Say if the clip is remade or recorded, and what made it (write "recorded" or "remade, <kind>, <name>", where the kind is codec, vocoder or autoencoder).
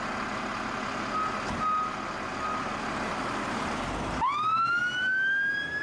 recorded